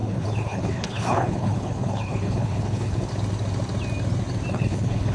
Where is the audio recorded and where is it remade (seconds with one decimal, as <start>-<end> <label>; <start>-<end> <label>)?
0.0-3.1 remade; 3.1-4.5 recorded; 4.5-5.1 remade